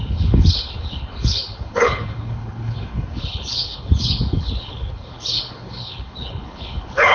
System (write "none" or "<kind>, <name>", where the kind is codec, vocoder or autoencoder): codec, HILCodec